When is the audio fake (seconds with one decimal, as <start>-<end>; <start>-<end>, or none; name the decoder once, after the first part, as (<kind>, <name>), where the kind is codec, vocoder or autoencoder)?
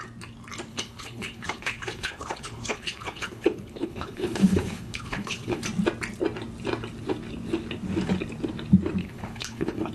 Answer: 0.7-5.6 (codec, HILCodec); 9.0-9.9